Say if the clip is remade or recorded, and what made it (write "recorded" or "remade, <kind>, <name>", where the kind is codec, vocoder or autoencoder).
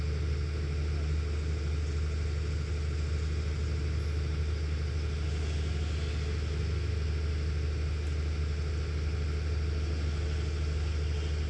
recorded